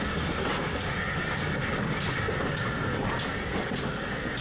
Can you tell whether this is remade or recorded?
recorded